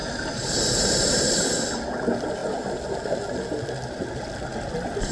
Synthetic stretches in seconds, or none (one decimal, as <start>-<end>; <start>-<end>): 0.0-1.2